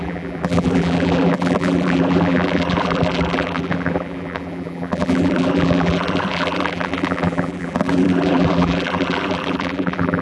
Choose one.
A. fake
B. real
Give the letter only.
A